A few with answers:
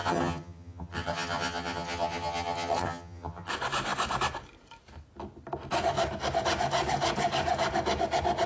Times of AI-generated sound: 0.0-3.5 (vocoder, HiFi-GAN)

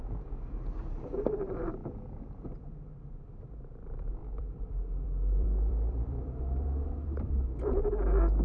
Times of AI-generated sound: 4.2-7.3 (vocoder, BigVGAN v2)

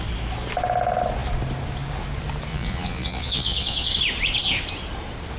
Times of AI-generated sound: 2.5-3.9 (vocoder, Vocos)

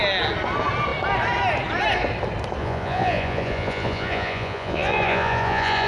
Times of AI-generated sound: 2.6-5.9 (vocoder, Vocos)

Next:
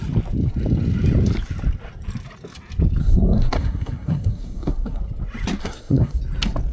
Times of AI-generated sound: 3.0-5.0 (codec, SNAC); 5.6-6.2